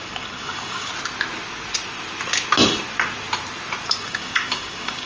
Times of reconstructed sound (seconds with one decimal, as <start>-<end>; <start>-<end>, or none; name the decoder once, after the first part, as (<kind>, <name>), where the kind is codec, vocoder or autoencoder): 0.0-0.9 (codec, DAC); 4.0-5.1